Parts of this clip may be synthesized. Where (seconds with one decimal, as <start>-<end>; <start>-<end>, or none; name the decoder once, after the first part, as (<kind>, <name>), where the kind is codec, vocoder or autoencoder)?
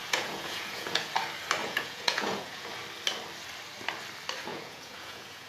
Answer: 0.0-1.1 (vocoder, Vocos); 1.6-2.7; 4.5-5.5